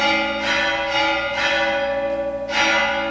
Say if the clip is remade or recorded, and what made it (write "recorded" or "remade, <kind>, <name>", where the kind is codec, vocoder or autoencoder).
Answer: recorded